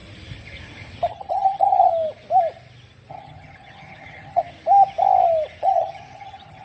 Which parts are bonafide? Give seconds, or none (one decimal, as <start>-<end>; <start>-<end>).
0.0-1.1; 1.9-3.1; 4.4-5.6